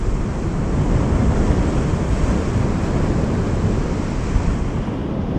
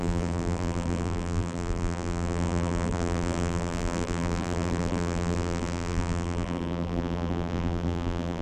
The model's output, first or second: second